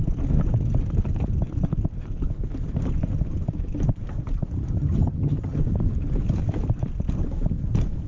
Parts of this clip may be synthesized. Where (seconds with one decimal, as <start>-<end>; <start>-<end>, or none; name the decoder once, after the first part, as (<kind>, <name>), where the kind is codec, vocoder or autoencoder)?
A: 4.8-5.6 (vocoder, HiFi-GAN)